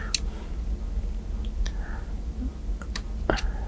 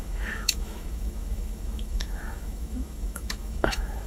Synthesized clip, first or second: second